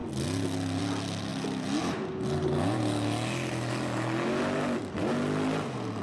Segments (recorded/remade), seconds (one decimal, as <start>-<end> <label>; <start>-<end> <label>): 0.0-6.0 recorded